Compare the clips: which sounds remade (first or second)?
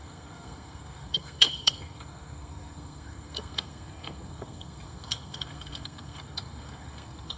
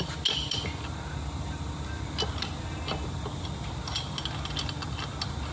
first